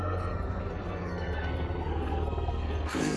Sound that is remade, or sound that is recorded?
remade